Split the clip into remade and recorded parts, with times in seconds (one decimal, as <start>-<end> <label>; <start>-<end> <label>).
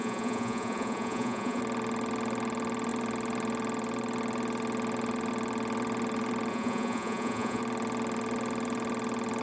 0.0-1.6 remade; 1.6-6.5 recorded; 6.5-7.6 remade; 7.6-9.4 recorded